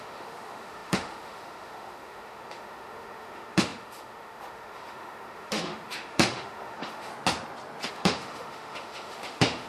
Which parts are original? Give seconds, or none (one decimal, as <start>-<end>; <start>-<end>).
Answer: 7.1-7.9